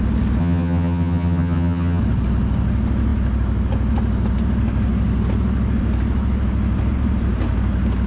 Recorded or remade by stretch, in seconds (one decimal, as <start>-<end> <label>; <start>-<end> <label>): 0.0-0.4 recorded; 0.4-2.0 remade; 2.0-8.1 recorded